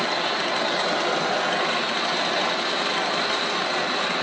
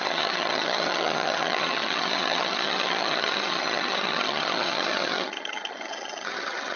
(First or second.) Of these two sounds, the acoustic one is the first